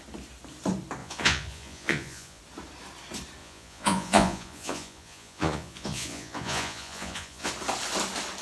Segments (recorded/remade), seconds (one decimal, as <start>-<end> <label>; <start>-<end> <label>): 0.0-1.0 recorded; 1.0-2.4 remade; 2.4-3.4 recorded; 3.4-7.5 remade; 7.5-8.4 recorded